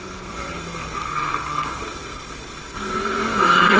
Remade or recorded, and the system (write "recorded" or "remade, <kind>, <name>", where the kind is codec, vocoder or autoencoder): remade, codec, SNAC